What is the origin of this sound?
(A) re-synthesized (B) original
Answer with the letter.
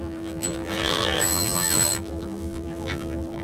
A